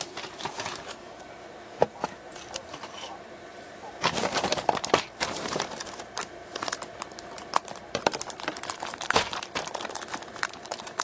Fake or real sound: fake